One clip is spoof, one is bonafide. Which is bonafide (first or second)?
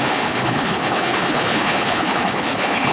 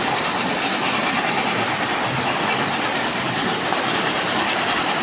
second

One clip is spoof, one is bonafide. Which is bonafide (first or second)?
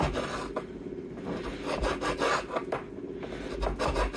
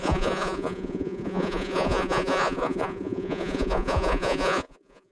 first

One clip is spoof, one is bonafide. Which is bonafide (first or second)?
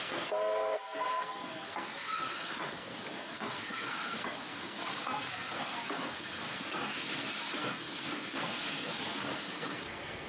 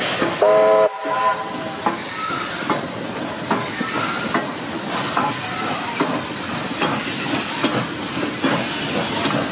second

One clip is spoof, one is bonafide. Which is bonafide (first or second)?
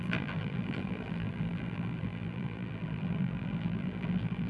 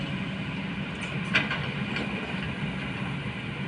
second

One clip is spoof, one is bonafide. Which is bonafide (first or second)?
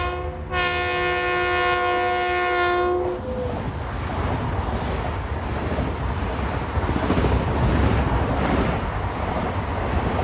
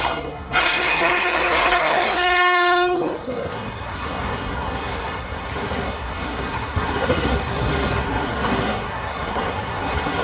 first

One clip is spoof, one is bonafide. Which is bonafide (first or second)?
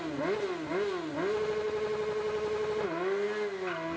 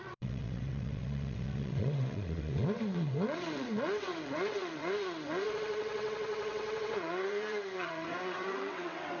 first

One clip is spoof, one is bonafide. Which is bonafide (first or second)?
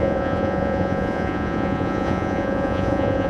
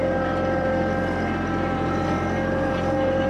second